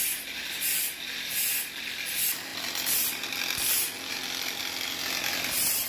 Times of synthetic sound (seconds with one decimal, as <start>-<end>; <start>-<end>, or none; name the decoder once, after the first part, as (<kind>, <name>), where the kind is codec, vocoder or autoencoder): none